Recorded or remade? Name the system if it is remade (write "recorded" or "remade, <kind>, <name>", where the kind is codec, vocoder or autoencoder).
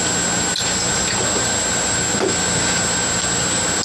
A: recorded